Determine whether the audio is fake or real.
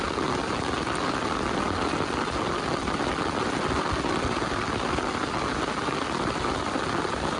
real